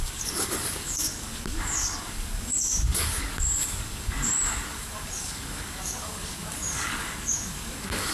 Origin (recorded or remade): remade